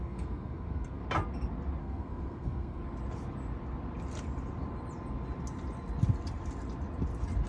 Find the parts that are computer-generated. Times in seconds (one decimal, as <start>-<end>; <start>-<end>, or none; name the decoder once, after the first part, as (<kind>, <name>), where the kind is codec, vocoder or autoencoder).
0.0-1.0 (codec, SNAC); 1.8-2.8